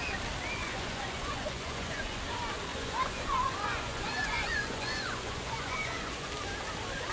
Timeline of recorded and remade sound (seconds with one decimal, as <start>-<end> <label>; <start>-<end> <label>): 0.0-0.6 recorded; 0.6-2.2 remade; 2.2-2.7 recorded; 2.7-6.3 remade; 6.3-7.1 recorded